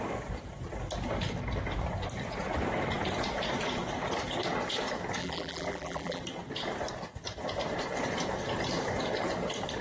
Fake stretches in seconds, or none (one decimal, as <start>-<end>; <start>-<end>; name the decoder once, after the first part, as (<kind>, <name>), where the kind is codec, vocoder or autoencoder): 5.2-6.2 (vocoder, BigVGAN v2)